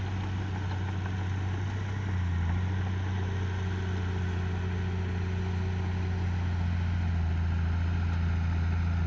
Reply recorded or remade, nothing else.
recorded